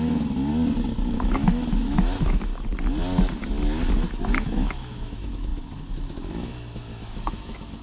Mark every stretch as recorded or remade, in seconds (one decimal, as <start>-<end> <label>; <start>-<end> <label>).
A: 0.0-0.5 remade; 0.5-1.1 recorded; 1.1-2.5 remade; 2.5-4.1 recorded; 4.1-7.8 remade